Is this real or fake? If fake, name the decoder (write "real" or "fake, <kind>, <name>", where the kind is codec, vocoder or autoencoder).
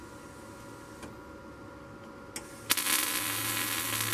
real